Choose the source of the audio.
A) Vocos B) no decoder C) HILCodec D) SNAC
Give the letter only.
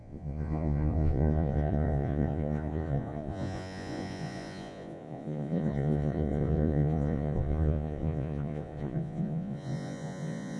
A